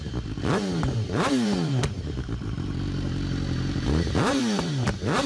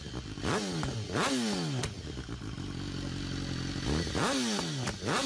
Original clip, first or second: second